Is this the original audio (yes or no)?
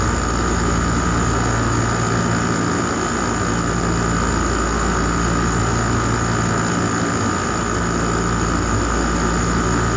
yes